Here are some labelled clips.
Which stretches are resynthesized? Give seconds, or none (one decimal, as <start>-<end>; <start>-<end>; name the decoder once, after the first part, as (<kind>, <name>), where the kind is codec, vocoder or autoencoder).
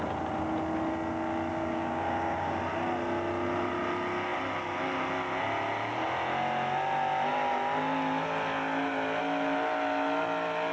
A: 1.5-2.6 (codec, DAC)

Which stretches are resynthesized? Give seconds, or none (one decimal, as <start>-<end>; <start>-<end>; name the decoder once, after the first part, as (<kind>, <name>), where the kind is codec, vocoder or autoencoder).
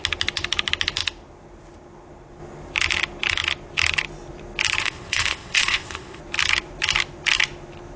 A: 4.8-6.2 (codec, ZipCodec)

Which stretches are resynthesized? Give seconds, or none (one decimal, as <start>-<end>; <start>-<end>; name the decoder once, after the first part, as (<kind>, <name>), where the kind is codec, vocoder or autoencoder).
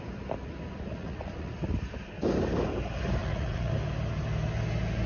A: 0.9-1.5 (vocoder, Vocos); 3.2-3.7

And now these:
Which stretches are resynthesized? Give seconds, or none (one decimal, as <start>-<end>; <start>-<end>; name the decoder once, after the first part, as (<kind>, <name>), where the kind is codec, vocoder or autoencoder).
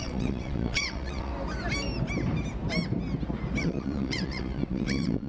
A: 0.0-1.3 (vocoder, WaveNeXt); 3.6-5.3